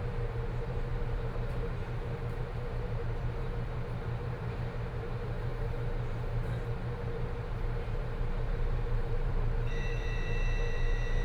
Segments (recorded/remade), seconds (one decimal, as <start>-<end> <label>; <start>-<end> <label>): 0.0-11.2 remade